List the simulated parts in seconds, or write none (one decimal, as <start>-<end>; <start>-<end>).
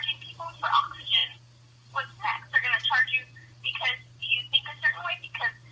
none